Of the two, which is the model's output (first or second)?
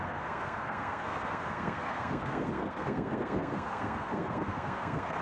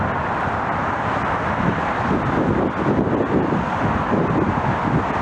first